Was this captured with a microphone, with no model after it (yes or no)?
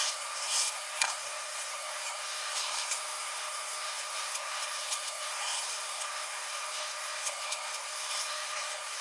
no